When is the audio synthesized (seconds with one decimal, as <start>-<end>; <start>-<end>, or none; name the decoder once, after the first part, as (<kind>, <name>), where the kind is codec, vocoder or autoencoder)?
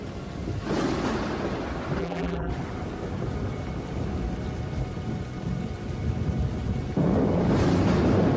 2.0-2.5 (vocoder, BigVGAN v2)